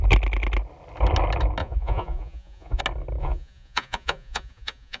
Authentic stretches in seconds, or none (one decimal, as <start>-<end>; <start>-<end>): 0.0-1.6; 2.8-3.2